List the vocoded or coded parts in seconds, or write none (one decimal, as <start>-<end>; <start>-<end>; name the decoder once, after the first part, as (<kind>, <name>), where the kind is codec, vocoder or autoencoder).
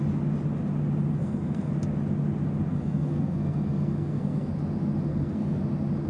1.2-1.7 (codec, SNAC); 2.7-4.5; 5.1-5.6